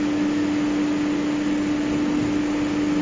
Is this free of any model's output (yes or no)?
yes